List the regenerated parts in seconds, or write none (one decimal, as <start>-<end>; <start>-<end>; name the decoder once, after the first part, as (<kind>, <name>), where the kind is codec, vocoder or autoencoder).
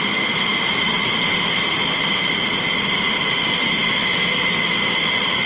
none